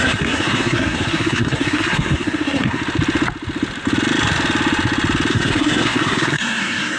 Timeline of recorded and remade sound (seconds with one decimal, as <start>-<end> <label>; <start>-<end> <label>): 0.0-2.8 remade; 2.8-5.3 recorded; 5.3-7.0 remade